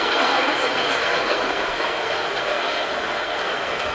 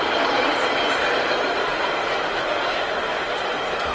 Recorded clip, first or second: second